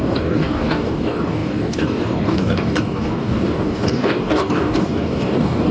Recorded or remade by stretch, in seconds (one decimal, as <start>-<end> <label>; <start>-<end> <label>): 0.0-5.7 remade